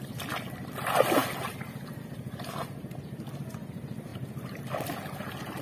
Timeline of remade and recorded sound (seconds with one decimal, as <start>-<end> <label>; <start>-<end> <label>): 0.0-5.6 recorded